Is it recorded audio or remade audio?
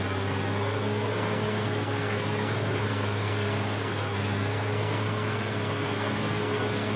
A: remade